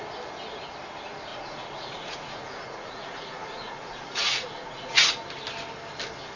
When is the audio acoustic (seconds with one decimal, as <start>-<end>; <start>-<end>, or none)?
0.0-1.3; 5.1-6.4